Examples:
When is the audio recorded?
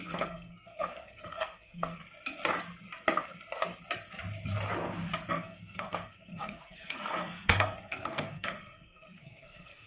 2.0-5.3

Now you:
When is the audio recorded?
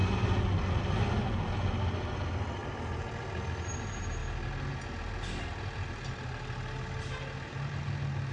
0.0-8.3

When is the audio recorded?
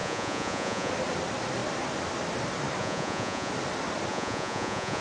0.9-2.8; 3.5-4.1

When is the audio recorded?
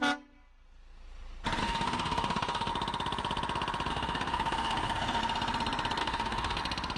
0.0-1.6; 2.7-3.9; 5.2-6.0; 6.6-7.0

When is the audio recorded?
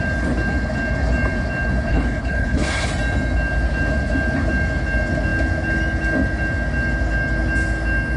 0.0-1.9; 2.9-8.2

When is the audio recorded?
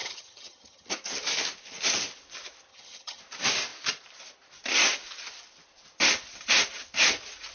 0.9-2.7; 3.2-7.5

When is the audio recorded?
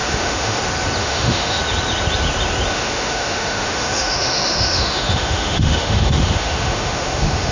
0.6-1.0; 1.6-2.7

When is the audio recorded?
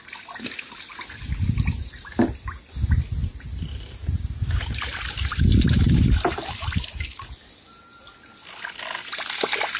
0.0-9.8